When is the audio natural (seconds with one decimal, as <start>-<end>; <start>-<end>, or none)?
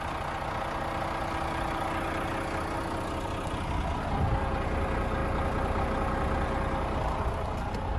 0.0-5.2; 5.8-8.0